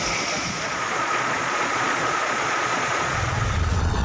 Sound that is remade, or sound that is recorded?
remade